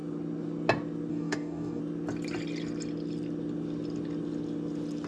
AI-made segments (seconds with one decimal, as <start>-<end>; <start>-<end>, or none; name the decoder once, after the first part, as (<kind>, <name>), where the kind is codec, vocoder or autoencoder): 1.1-1.8 (codec, DAC)